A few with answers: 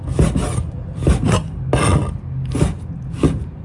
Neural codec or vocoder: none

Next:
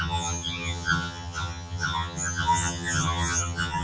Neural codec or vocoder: vocoder, HiFi-GAN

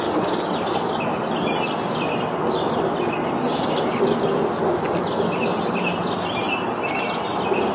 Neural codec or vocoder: none